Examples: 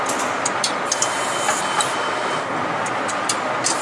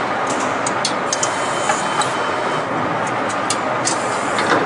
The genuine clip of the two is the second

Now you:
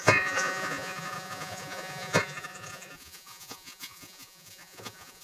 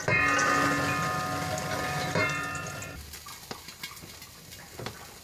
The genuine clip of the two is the second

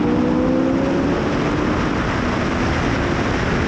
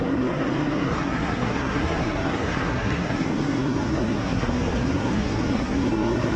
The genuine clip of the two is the first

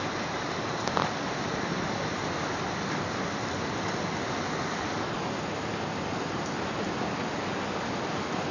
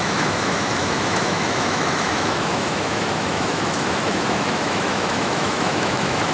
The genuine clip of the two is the first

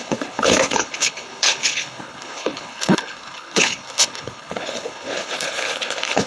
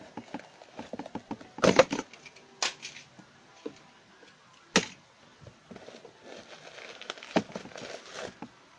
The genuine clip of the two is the second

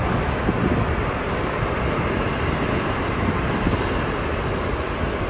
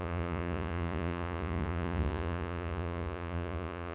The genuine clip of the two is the first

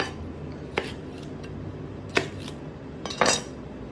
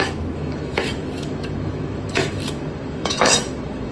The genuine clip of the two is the first